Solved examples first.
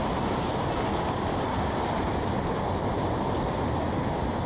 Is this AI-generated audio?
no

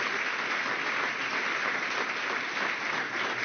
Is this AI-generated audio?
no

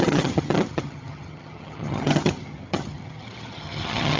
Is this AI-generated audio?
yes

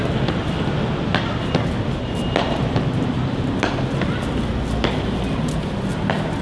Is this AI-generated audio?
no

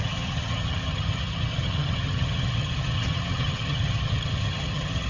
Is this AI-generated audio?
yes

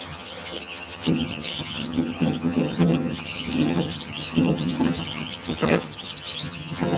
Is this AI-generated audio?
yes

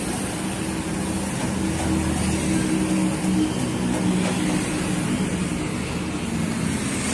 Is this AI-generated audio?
no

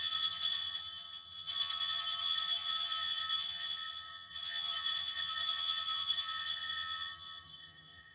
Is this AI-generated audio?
yes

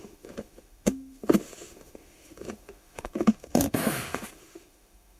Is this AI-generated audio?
yes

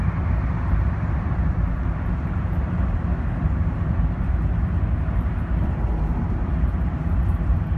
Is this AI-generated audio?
yes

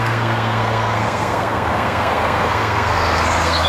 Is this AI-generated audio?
yes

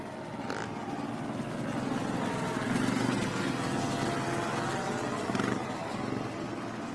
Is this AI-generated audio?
no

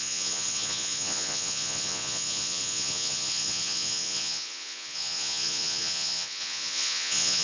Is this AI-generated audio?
yes